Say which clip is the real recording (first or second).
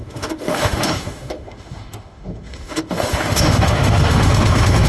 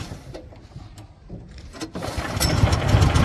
second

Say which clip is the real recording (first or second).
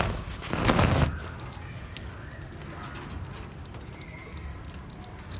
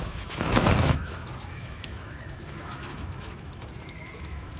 first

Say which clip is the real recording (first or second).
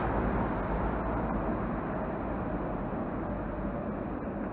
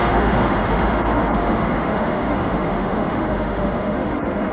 first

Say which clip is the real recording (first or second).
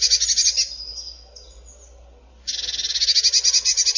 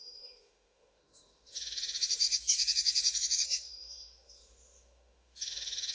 first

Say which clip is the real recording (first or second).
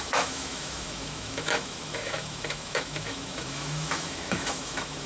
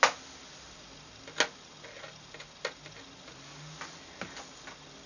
second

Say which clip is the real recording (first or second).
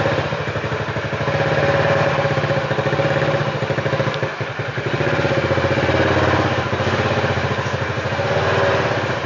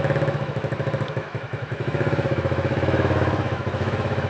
first